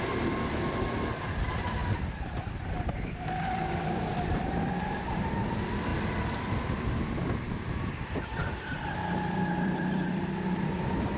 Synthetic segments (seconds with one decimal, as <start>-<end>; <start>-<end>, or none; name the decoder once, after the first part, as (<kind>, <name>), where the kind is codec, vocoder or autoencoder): 0.0-1.8 (vocoder, BigVGAN v2); 3.1-11.2